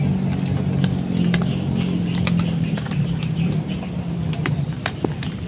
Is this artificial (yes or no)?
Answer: no